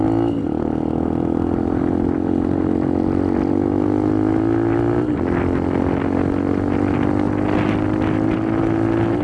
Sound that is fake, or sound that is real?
real